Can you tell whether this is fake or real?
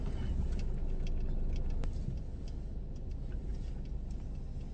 real